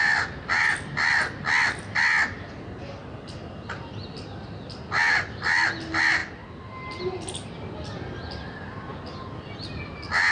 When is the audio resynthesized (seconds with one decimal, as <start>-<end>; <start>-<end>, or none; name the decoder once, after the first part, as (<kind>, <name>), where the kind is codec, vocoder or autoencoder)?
none